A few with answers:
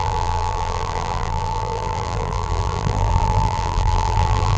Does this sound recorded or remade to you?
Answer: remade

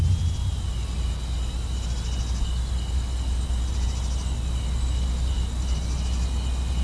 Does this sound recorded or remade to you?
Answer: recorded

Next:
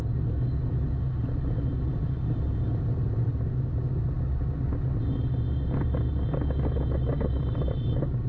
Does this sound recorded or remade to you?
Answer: recorded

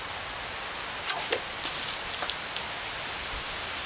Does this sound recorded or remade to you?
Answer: recorded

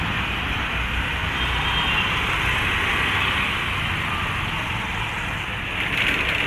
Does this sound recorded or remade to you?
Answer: recorded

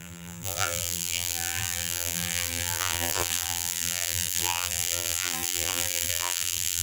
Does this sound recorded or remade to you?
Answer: remade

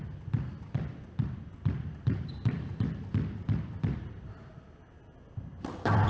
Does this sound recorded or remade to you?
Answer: remade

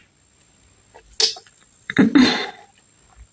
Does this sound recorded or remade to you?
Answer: recorded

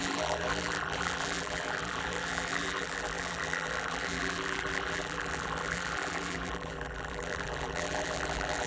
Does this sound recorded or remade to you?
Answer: remade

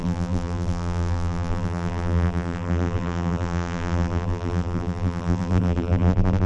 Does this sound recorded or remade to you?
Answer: remade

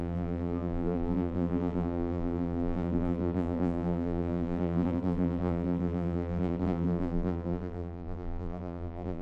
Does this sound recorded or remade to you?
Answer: remade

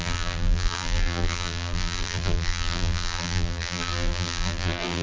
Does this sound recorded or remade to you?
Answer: remade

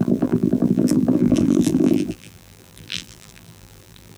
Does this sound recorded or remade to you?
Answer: remade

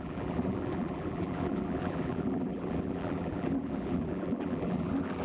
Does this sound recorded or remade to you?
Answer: remade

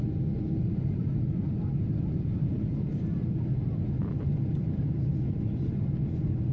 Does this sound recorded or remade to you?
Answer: remade